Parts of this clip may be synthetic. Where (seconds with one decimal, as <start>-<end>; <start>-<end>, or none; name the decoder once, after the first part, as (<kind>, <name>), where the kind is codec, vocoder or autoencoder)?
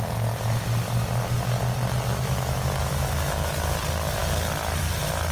2.1-3.5 (autoencoder, DAC-VAE)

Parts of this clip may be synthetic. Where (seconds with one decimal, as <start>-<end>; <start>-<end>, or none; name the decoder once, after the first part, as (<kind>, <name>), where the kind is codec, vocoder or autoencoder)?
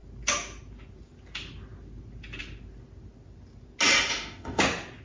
4.1-4.6 (autoencoder, DAC-VAE)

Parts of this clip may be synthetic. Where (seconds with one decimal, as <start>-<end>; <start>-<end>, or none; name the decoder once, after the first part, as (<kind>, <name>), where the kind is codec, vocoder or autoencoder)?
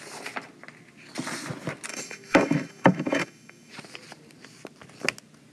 1.9-3.7 (autoencoder, DAC-VAE)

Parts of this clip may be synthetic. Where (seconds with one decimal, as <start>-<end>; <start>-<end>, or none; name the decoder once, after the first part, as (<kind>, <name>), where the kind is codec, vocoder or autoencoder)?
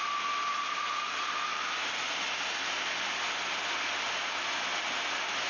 none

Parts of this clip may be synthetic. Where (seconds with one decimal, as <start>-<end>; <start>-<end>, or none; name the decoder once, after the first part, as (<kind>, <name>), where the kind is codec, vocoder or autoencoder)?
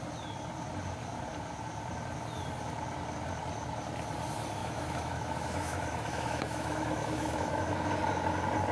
4.6-7.9 (autoencoder, DAC-VAE)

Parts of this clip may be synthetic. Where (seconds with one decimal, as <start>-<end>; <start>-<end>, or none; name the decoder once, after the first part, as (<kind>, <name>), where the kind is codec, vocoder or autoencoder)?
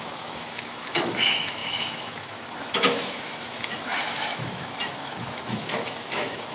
0.0-6.5 (autoencoder, DAC-VAE)